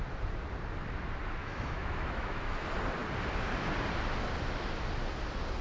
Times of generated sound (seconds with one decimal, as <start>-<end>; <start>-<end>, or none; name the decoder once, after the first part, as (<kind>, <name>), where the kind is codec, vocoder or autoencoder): 1.4-2.6 (autoencoder, DAC-VAE)